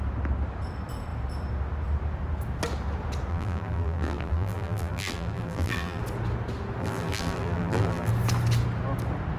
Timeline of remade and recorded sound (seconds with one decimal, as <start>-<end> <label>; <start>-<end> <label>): 0.0-3.3 recorded; 3.3-6.0 remade; 6.0-6.8 recorded; 6.8-8.1 remade; 8.1-9.4 recorded